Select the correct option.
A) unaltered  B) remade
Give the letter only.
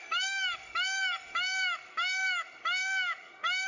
B